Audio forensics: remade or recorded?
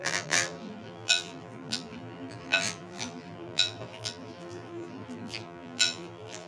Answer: remade